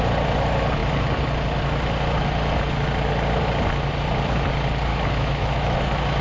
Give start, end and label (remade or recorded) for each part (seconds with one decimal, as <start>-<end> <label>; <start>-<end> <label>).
0.0-4.9 recorded; 4.9-5.7 remade; 5.7-6.2 recorded